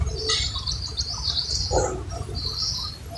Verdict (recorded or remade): recorded